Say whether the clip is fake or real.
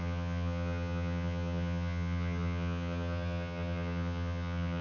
fake